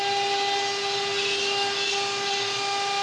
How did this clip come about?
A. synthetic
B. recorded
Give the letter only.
B